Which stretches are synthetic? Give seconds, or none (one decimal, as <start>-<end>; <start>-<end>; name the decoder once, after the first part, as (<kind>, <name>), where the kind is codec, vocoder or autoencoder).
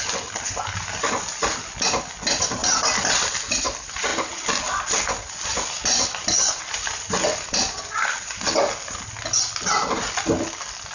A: 2.6-3.4 (vocoder, BigVGAN v2)